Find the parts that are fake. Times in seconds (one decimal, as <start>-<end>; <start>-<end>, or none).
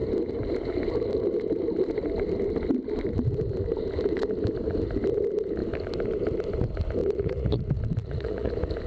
7.0-7.6; 8.0-8.5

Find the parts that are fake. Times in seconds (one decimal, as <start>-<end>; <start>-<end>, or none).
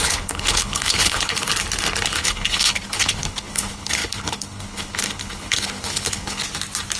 0.0-1.5; 2.1-6.4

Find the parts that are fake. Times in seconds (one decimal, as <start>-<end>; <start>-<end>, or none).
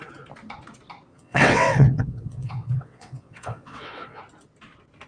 1.1-4.2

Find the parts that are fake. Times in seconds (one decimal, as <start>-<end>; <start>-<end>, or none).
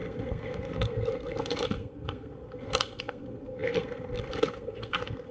0.0-5.3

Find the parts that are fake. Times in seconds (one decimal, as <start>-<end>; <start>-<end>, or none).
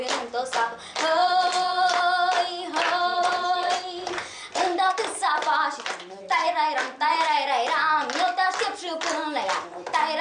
1.2-2.0; 3.1-4.9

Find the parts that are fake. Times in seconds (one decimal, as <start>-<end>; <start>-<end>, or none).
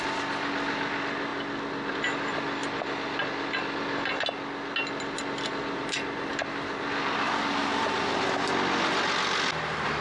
none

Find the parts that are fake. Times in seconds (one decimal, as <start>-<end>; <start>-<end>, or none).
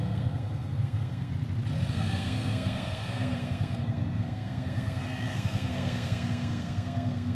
0.0-1.3; 1.9-7.3